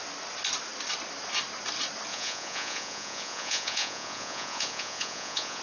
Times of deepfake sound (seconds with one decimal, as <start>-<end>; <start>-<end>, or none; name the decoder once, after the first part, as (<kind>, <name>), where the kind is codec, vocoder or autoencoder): 2.1-5.6 (vocoder, Vocos)